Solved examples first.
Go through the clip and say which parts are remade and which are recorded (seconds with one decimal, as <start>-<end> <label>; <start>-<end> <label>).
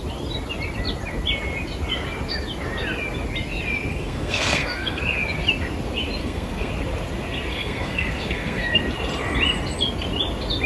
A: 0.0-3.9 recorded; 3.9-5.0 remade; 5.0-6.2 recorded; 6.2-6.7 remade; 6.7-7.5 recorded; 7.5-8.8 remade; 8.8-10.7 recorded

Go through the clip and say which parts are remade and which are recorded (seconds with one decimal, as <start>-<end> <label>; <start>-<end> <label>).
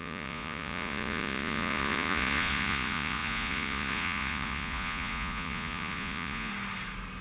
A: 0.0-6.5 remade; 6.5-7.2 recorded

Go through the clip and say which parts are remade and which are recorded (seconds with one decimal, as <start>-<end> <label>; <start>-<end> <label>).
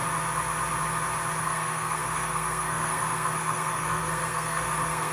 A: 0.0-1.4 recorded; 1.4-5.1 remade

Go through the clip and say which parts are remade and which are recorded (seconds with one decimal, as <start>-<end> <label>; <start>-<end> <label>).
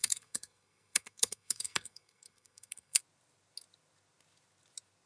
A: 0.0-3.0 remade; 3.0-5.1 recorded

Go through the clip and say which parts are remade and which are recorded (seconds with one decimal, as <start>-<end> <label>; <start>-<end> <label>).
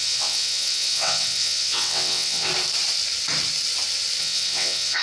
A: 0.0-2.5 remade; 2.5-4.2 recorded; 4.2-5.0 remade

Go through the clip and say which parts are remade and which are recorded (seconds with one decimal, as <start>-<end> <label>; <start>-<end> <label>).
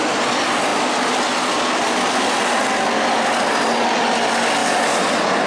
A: 0.0-4.6 recorded; 4.6-5.5 remade